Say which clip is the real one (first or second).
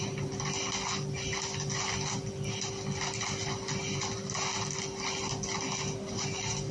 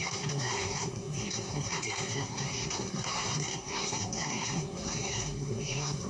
first